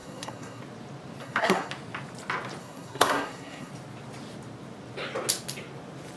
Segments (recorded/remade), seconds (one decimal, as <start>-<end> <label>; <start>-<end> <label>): 0.0-0.6 remade; 0.6-1.2 recorded; 1.2-1.7 remade; 1.7-2.6 recorded; 2.6-3.7 remade; 3.7-6.2 recorded